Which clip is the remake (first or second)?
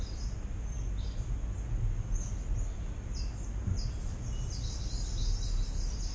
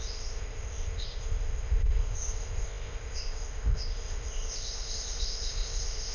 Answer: second